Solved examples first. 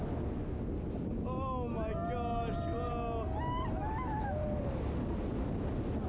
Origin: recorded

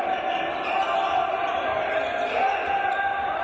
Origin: recorded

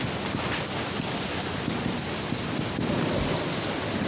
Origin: recorded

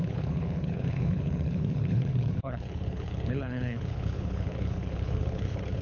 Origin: remade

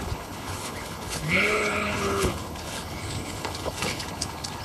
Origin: remade